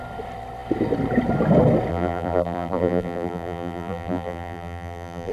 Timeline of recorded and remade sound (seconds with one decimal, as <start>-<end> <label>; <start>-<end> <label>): 0.0-1.9 recorded; 1.9-5.3 remade